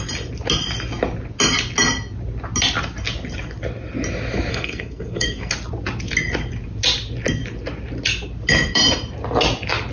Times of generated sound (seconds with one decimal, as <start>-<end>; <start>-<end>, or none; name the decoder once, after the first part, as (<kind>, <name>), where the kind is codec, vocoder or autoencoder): 4.5-5.5 (codec, SNAC)